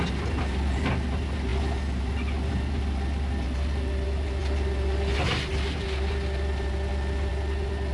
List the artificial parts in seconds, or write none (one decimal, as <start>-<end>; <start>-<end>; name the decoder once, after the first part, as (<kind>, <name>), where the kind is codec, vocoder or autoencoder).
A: none